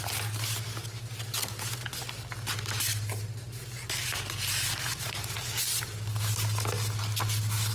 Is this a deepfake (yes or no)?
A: no